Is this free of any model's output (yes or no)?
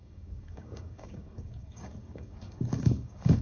no